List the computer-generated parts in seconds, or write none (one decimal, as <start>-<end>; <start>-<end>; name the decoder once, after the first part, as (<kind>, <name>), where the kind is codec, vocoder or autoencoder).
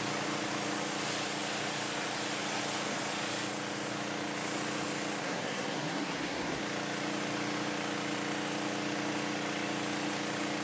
5.2-6.6 (codec, SNAC)